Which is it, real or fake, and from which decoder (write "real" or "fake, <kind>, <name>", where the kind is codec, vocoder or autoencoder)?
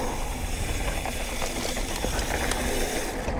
real